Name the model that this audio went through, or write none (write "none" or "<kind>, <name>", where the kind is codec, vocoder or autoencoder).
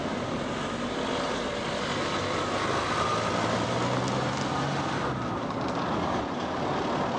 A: none